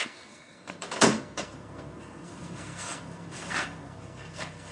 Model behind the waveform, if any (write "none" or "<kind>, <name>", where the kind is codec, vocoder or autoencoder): codec, SNAC